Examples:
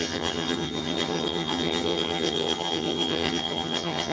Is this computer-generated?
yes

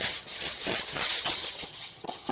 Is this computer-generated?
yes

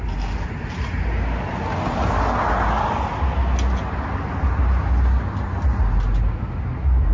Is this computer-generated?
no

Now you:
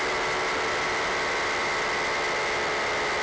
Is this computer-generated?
no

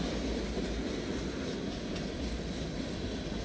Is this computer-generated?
no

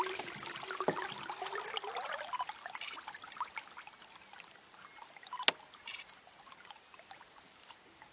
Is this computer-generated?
no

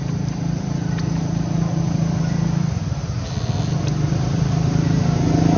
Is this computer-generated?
no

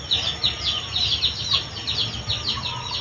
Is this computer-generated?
no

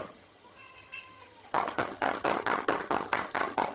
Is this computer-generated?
yes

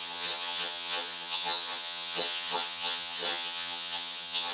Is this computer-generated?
yes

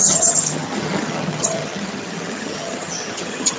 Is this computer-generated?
yes